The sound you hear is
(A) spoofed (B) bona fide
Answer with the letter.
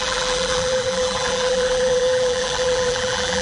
A